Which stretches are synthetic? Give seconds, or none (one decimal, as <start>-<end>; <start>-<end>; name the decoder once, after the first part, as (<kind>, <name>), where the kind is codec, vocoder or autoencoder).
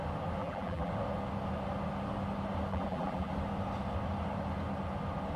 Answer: 0.4-0.9 (vocoder, BigVGAN v2); 2.7-3.3